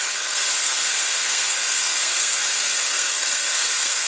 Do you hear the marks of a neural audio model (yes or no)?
yes